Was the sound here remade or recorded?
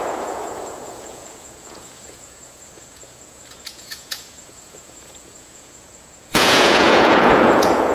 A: remade